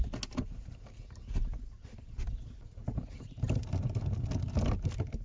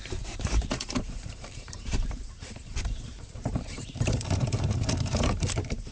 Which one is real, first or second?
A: first